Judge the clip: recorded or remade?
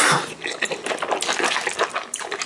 recorded